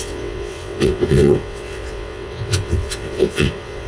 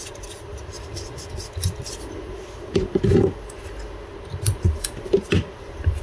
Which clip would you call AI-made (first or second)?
first